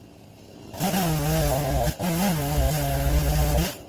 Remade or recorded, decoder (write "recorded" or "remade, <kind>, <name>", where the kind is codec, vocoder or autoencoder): recorded